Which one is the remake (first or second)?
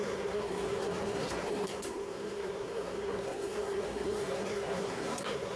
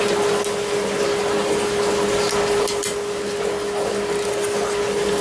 first